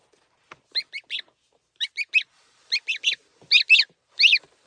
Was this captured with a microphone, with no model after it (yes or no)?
yes